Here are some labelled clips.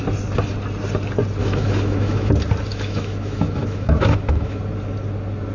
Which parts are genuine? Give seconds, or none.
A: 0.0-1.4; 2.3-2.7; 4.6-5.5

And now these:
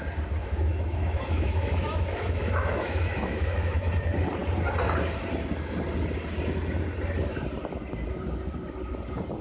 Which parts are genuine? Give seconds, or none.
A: 0.0-0.4; 3.9-9.4

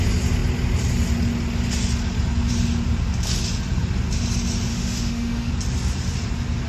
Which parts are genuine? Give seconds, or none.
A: 0.0-4.7; 5.5-6.7